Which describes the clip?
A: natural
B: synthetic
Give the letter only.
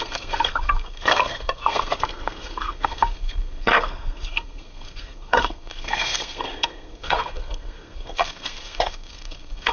B